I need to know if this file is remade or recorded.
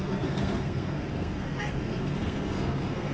remade